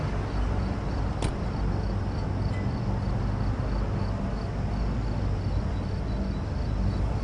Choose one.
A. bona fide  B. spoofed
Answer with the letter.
A